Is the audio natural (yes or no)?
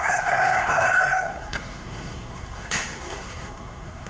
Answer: no